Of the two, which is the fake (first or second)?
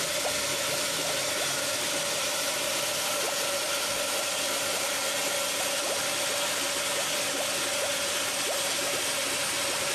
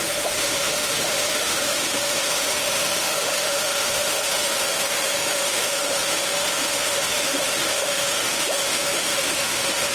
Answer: second